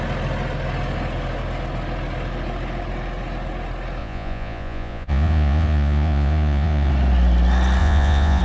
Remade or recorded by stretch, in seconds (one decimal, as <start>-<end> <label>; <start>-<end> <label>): 0.0-4.0 recorded; 4.0-6.9 remade; 6.9-7.8 recorded; 7.8-8.4 remade